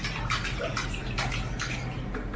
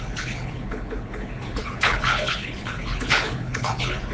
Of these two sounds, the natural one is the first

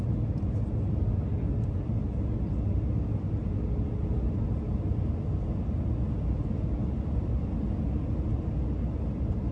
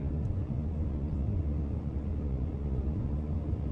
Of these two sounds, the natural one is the first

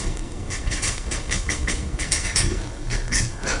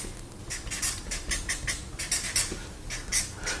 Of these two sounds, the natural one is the second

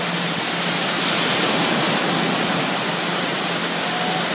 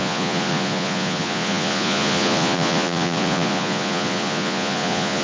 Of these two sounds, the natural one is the first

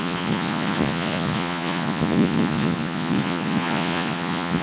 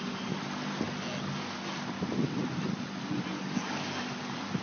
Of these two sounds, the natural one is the second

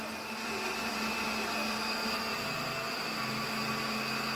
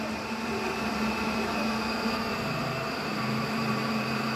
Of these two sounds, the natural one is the first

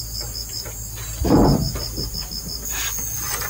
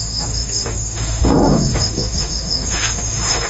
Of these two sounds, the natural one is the first